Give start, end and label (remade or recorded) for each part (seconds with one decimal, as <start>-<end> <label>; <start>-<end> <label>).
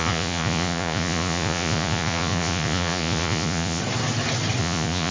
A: 0.0-3.8 remade; 3.8-4.6 recorded; 4.6-5.1 remade